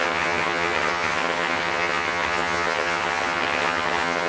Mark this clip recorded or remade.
remade